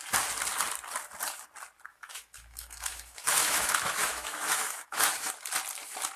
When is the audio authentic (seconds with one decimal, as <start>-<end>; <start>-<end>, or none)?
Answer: 0.0-1.9; 5.3-6.2